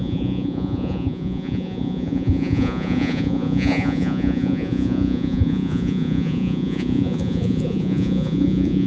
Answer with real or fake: fake